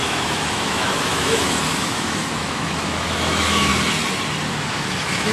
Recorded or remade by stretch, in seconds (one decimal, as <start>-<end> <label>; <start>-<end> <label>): 0.0-3.7 remade; 3.7-4.7 recorded; 4.7-5.3 remade